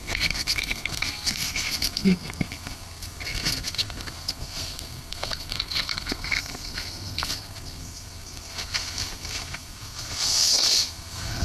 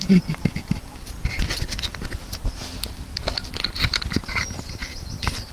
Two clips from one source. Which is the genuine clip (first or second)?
second